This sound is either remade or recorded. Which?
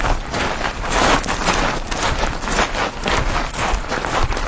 recorded